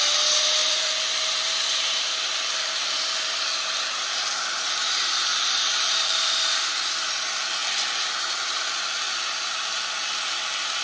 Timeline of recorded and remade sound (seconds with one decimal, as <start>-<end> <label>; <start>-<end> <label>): 0.0-0.6 recorded; 0.6-1.9 remade; 1.9-5.3 recorded; 5.3-6.4 remade; 6.4-10.8 recorded